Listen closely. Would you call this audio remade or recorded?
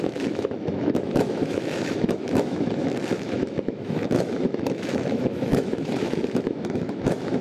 remade